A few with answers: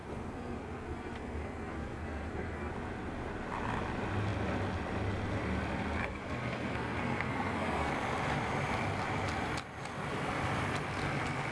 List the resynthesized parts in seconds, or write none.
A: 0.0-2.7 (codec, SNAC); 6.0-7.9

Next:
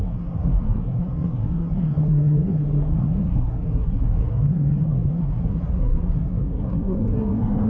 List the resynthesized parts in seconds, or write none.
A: 0.0-7.7 (codec, SNAC)

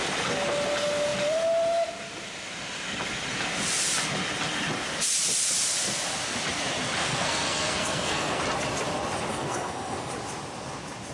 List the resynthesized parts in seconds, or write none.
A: 7.0-8.4 (codec, SNAC); 9.3-10.1

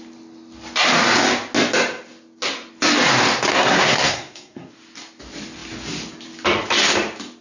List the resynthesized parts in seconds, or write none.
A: 3.5-4.7 (codec, SNAC)

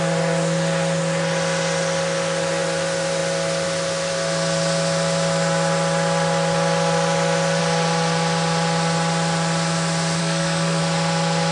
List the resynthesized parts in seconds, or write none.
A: 10.2-10.8 (codec, SNAC)

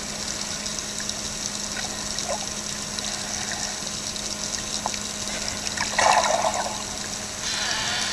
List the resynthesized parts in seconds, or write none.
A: none

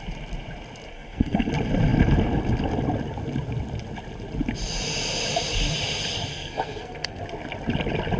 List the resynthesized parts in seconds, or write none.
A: 0.9-1.5 (codec, SNAC); 6.3-7.2

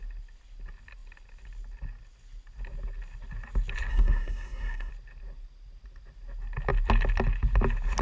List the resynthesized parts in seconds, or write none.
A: 3.9-4.9 (codec, SNAC)